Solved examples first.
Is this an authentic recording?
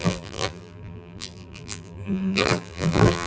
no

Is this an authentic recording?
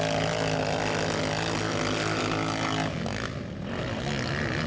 yes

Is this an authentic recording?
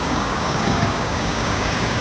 no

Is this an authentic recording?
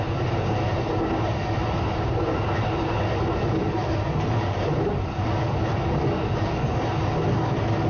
yes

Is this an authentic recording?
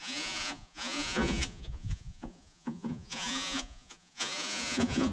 no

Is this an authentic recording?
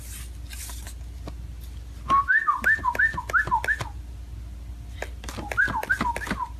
yes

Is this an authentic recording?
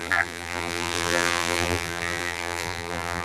no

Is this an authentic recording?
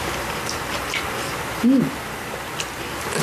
yes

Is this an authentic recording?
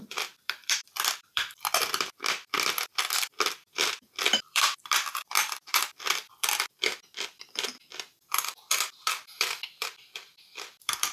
no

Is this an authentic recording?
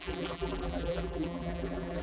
no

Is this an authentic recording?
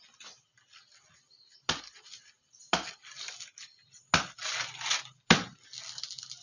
yes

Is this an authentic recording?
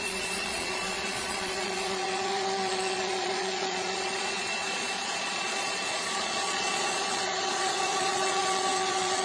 no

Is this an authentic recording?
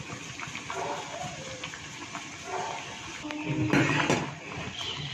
yes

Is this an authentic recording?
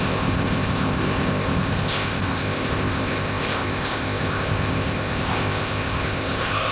no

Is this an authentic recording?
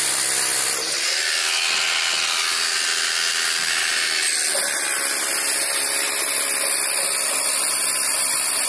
yes